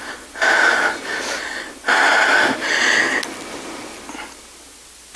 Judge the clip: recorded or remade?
recorded